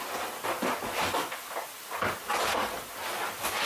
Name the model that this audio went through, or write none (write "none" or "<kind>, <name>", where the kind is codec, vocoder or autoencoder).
none